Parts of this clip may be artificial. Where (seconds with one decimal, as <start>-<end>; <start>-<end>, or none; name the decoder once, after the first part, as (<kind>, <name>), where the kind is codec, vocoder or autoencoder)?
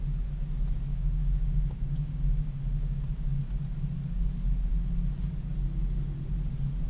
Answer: 0.9-2.2 (codec, DAC)